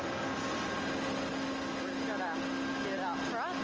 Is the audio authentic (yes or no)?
yes